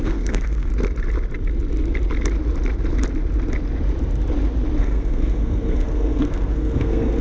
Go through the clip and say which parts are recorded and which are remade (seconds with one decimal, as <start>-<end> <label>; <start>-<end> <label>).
0.0-0.7 remade; 0.7-4.8 recorded; 4.8-7.2 remade